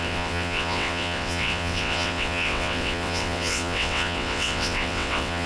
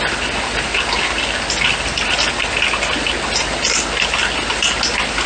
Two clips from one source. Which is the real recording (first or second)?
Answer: second